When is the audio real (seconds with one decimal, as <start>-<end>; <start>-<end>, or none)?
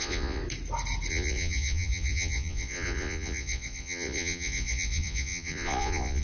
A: 0.4-1.1